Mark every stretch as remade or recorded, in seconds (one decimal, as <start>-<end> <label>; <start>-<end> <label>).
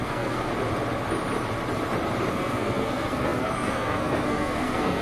0.0-0.5 remade; 0.5-2.3 recorded; 2.3-5.0 remade